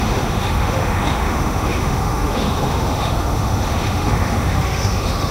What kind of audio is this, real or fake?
fake